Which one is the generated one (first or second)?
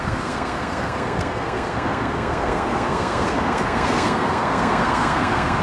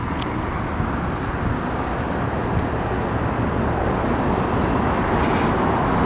first